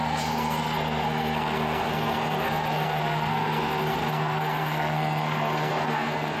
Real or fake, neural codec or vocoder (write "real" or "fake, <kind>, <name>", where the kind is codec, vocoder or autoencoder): fake, codec, SNAC